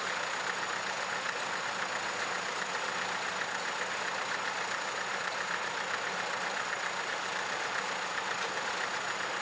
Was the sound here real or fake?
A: real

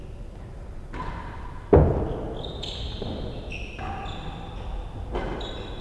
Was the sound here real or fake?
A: real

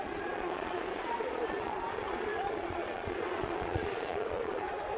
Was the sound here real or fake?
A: fake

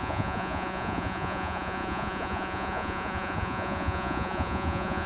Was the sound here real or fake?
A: fake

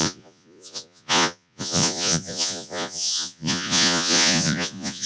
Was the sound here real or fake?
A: fake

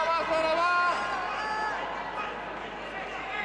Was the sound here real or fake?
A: real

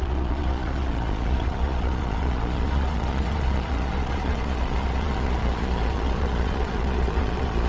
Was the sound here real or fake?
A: fake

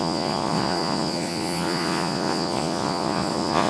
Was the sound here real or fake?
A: fake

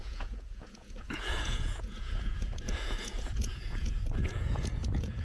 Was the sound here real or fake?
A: fake